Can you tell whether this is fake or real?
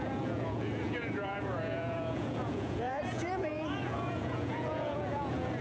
fake